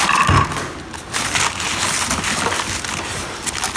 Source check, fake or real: real